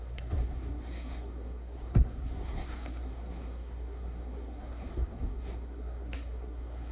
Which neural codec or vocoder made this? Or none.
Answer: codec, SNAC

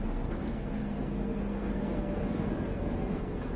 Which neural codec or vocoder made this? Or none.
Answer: codec, SNAC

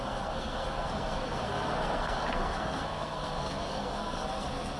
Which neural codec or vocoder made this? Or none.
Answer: codec, SNAC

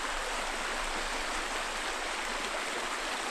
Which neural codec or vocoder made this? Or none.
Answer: none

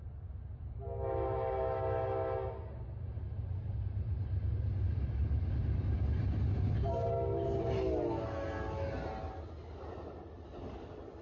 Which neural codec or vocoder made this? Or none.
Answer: none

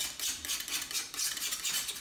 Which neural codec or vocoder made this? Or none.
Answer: none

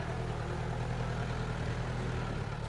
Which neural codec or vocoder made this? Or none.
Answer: none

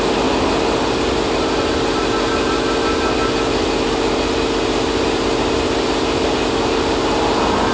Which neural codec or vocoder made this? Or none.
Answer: none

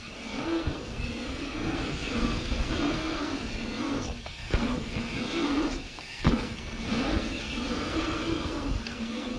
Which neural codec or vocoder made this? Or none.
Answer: codec, SNAC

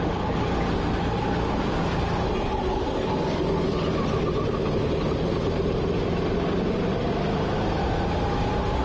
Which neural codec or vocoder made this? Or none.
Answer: none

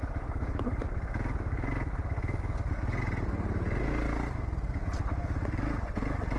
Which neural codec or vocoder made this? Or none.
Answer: none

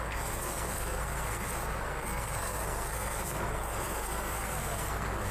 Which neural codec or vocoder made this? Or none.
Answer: codec, SNAC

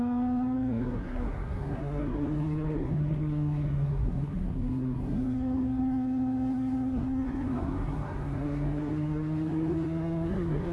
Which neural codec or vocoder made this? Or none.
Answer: codec, SNAC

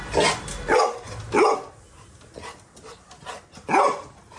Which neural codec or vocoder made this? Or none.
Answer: none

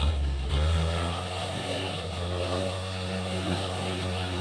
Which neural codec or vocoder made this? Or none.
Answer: codec, SNAC